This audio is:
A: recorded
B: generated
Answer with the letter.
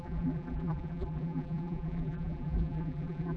B